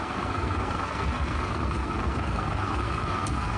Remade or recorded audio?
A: remade